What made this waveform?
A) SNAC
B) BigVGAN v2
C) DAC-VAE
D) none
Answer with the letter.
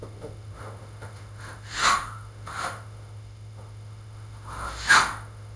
C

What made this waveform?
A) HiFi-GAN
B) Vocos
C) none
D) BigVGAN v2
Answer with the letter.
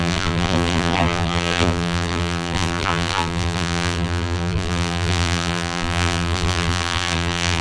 D